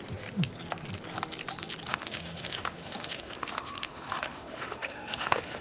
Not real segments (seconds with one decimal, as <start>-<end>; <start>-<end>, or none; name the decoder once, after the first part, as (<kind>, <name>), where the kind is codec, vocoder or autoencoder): 1.9-5.6 (autoencoder, DAC-VAE)